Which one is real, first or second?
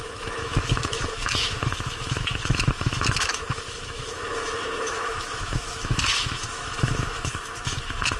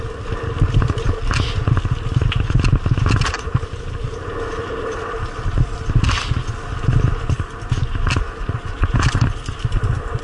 second